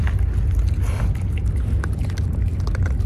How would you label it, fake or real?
real